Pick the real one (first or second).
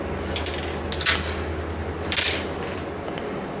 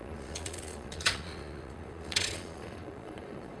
first